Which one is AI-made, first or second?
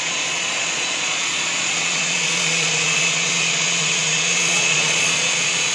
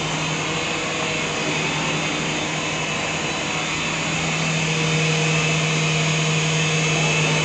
first